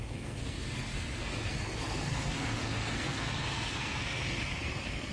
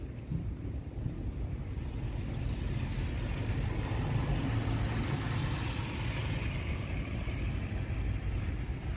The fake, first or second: first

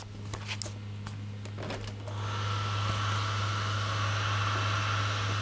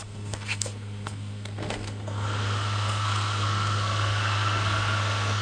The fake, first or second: second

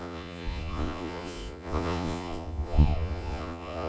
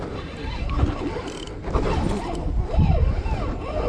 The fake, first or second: first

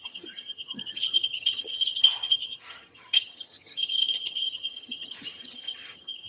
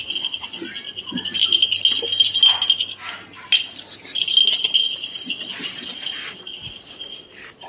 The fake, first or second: first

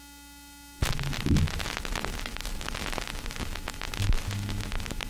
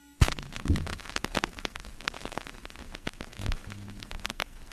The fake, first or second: second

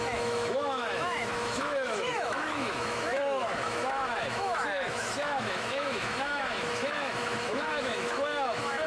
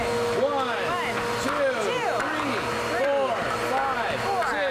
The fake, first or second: first